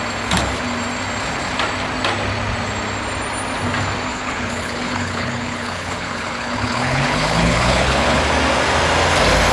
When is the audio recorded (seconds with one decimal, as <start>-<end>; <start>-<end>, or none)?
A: 0.0-4.1; 8.2-9.5